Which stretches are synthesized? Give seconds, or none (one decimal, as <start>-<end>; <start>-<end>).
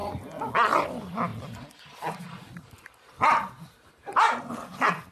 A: none